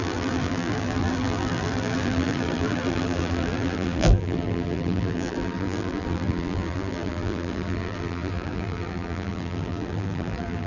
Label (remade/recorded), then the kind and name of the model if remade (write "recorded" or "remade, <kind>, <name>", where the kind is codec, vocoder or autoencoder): remade, vocoder, BigVGAN v2